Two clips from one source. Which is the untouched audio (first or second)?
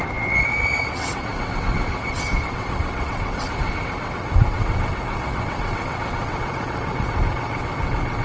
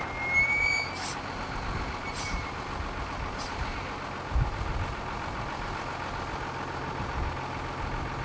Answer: second